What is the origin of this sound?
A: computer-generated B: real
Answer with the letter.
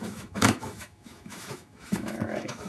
A